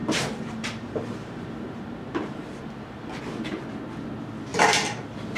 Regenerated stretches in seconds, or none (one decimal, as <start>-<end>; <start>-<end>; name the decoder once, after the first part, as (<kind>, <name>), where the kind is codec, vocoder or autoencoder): 0.0-3.2 (vocoder, BigVGAN v2); 4.5-5.0